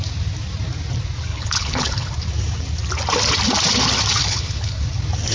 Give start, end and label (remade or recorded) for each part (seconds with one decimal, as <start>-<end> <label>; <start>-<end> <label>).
0.0-1.3 recorded; 1.3-2.1 remade; 2.1-4.2 recorded; 4.2-4.8 remade; 4.8-5.3 recorded